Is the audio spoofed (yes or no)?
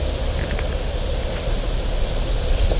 no